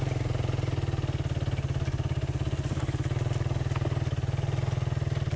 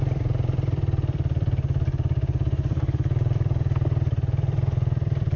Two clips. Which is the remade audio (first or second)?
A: second